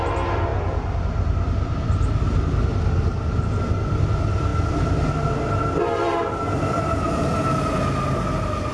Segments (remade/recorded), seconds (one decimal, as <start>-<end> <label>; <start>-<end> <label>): 0.0-0.5 recorded; 0.5-2.7 remade; 2.7-4.5 recorded; 4.5-7.6 remade; 7.6-8.7 recorded